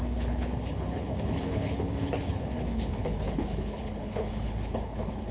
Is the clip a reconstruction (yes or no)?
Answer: yes